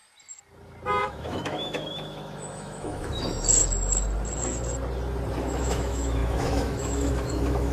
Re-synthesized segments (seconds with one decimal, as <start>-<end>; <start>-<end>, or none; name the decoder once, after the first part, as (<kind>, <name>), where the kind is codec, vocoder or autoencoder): 1.0-3.6 (autoencoder, DAC-VAE); 5.4-7.7